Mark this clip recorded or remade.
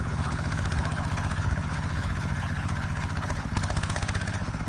remade